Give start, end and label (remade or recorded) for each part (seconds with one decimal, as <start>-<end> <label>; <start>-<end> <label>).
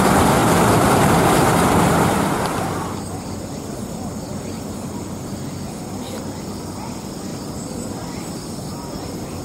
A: 0.0-0.4 recorded; 0.4-5.4 remade; 5.4-7.3 recorded; 7.3-8.7 remade; 8.7-9.4 recorded